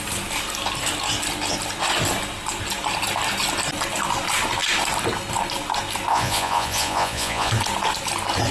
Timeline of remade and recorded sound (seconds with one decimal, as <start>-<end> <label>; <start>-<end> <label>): 0.0-6.1 recorded; 6.1-7.5 remade; 7.5-8.5 recorded